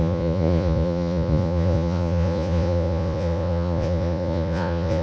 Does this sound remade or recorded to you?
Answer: remade